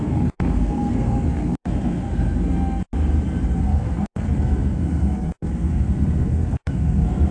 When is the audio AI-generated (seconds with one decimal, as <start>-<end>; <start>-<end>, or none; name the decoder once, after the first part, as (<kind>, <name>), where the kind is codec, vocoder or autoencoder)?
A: 0.0-2.8 (codec, SNAC); 3.6-7.3